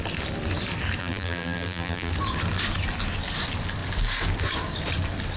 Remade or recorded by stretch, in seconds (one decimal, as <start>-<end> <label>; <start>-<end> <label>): 0.0-1.0 recorded; 1.0-2.1 remade; 2.1-5.4 recorded